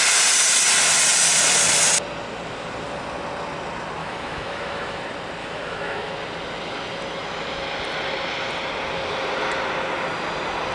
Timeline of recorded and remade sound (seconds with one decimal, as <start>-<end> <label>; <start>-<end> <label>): 0.0-4.0 recorded; 4.0-5.0 remade; 5.0-5.4 recorded; 5.4-6.1 remade; 6.1-10.7 recorded